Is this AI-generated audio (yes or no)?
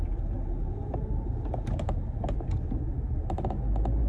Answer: no